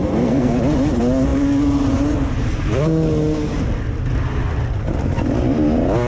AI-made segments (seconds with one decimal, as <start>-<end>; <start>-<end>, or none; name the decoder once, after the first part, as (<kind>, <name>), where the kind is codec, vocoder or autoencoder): 0.0-0.5 (codec, SNAC)